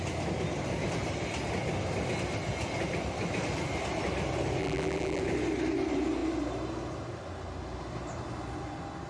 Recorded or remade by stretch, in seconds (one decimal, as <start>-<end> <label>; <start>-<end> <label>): 0.0-4.6 recorded; 4.6-5.2 remade; 5.2-9.1 recorded